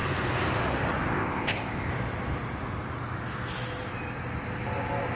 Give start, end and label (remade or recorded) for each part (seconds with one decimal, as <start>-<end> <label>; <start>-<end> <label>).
0.0-1.1 recorded; 1.1-1.9 remade; 1.9-5.2 recorded